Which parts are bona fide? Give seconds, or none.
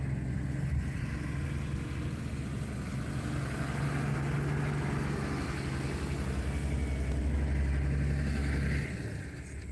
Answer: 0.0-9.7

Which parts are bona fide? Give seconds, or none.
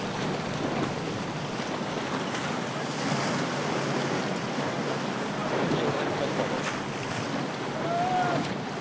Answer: 0.0-8.8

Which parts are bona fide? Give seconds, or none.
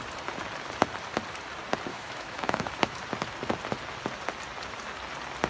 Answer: 0.0-1.9; 3.0-5.5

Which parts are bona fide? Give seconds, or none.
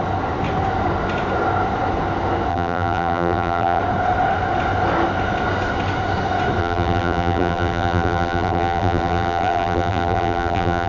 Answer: 0.0-2.5; 3.8-6.6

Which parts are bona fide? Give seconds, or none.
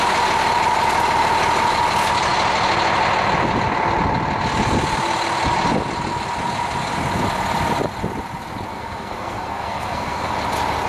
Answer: 0.0-8.7; 10.3-10.9